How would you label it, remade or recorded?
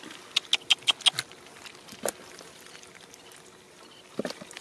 recorded